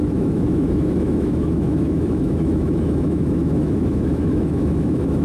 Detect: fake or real fake